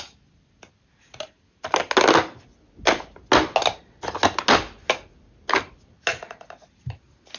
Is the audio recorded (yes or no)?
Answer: yes